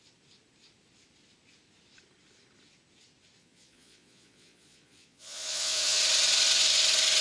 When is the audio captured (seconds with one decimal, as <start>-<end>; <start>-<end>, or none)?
0.0-3.4; 6.0-7.2